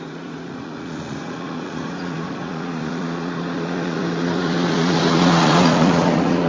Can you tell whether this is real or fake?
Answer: fake